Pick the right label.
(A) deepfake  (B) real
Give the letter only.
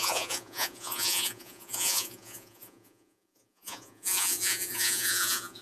A